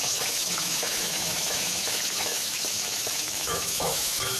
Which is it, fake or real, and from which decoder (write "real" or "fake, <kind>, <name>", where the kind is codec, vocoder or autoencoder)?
fake, autoencoder, DAC-VAE